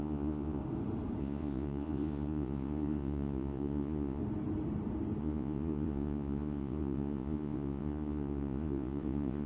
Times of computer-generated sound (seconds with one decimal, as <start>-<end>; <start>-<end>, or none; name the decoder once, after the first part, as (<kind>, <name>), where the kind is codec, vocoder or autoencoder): 0.0-0.6 (vocoder, Vocos); 1.2-4.2; 5.2-9.5